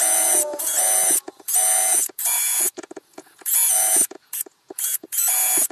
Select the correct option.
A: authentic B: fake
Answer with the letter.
B